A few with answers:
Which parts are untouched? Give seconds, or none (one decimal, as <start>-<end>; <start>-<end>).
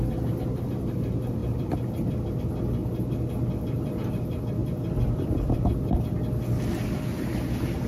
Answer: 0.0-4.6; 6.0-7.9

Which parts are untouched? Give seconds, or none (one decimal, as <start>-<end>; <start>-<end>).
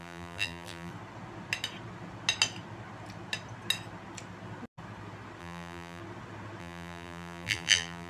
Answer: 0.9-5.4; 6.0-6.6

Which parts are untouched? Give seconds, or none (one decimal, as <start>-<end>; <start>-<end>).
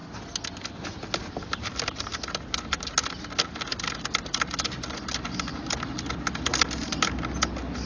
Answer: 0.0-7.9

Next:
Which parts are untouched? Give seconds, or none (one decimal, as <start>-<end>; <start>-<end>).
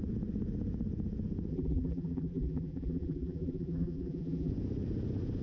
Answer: 0.0-1.5; 4.5-5.4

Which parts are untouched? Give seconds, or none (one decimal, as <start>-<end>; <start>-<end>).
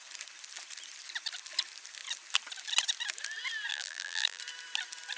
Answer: 0.0-3.7; 4.4-5.2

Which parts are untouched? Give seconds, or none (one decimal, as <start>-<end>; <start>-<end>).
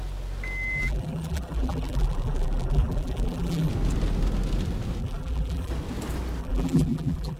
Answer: 0.0-0.8; 3.7-5.0; 5.7-6.4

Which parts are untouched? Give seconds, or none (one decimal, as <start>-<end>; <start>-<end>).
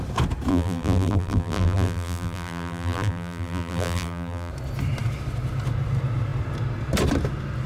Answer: 0.0-0.5; 4.5-7.7